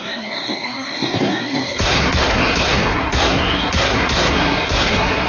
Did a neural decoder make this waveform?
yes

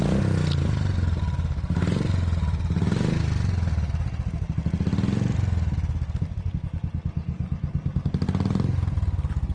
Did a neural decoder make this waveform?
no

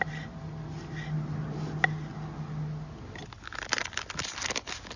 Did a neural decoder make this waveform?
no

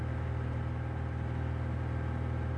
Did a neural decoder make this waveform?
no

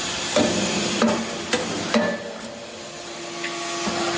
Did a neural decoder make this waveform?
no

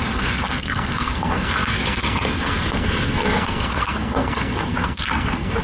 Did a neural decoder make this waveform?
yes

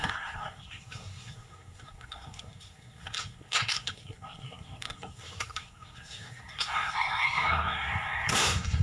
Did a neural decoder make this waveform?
yes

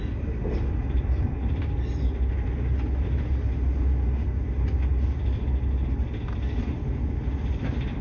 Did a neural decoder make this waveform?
no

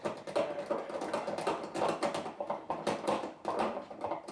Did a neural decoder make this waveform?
no